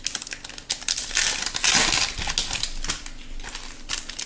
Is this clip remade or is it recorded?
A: recorded